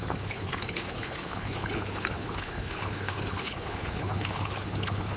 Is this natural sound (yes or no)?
no